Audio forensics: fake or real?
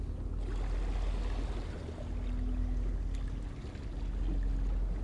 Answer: real